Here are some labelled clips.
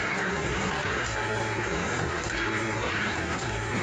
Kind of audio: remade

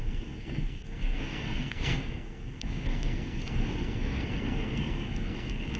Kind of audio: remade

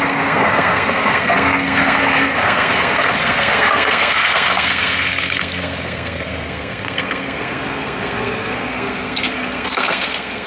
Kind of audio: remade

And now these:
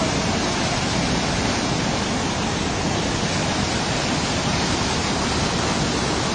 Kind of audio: recorded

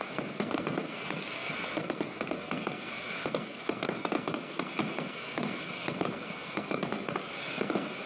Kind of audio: remade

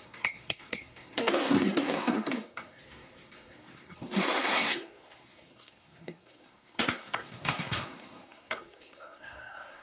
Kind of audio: remade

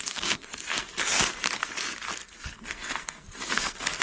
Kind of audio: remade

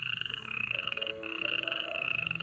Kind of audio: remade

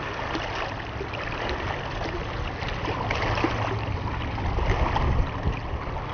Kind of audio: recorded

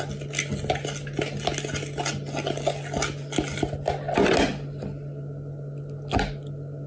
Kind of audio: recorded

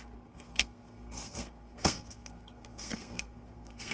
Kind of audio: remade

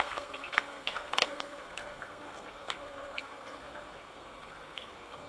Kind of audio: remade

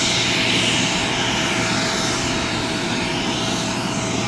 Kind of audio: recorded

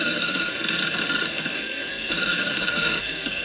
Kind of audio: remade